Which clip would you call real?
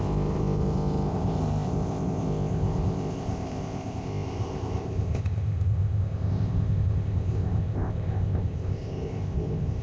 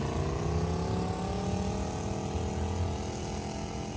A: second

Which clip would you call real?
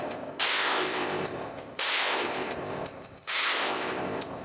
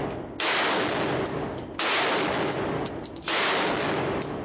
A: second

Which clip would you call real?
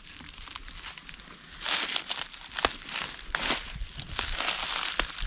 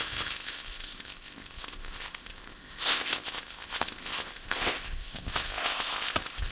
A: first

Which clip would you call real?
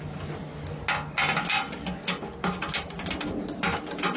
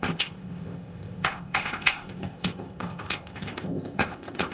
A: first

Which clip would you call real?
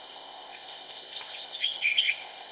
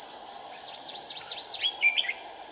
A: second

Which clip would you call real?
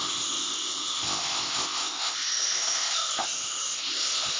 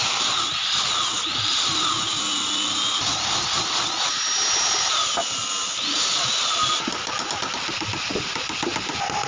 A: second